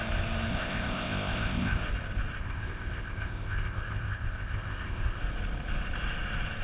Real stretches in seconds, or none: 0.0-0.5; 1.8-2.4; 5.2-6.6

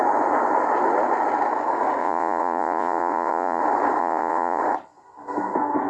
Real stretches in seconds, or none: 0.0-2.0; 3.6-4.0; 4.6-5.9

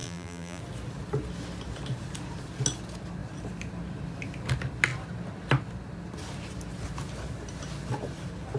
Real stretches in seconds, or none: 0.6-8.6